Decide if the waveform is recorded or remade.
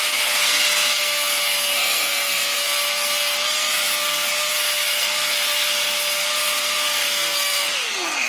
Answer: remade